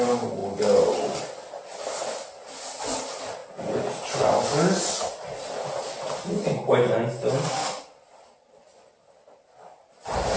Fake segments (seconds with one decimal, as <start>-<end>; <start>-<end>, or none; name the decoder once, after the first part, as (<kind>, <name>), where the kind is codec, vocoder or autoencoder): none